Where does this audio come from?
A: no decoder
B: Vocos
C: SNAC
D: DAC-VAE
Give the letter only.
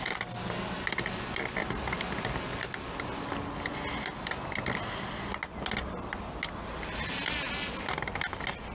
A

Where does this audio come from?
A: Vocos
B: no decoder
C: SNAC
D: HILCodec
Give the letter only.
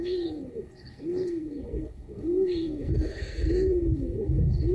C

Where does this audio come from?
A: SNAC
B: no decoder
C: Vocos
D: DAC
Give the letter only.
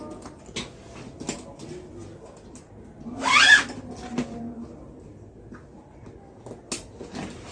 B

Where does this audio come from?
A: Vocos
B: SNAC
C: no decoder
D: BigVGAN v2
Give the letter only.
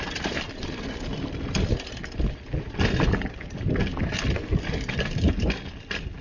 C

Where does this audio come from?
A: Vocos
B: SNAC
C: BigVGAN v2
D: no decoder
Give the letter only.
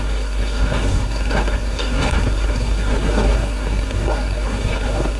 B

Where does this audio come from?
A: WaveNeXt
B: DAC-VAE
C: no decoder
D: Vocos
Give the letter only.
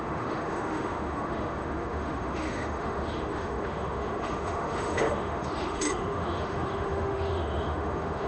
B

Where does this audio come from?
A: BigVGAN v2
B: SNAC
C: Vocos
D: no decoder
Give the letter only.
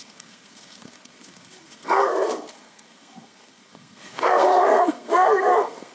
B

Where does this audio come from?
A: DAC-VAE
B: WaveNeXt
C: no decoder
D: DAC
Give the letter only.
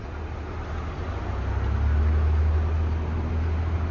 C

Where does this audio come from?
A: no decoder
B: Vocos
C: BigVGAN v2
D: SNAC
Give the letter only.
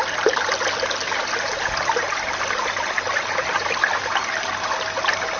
A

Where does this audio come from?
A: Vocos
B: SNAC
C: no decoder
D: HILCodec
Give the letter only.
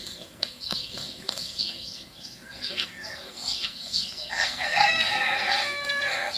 B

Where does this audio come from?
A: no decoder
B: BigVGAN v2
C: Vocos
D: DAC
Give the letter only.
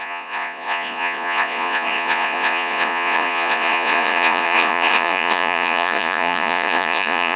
C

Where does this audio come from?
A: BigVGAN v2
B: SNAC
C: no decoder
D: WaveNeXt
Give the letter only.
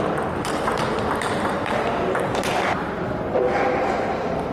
A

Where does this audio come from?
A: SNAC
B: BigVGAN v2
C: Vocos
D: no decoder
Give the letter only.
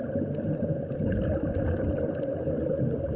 D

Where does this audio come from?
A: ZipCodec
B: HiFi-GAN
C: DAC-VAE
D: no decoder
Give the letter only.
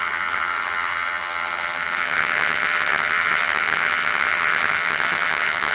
B